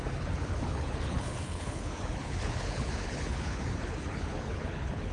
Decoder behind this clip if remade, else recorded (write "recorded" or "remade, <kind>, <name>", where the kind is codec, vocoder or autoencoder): remade, codec, HILCodec